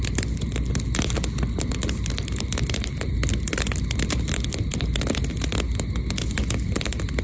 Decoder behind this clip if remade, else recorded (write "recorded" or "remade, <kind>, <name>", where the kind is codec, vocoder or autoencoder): recorded